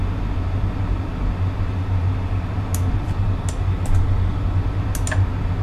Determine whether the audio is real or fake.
real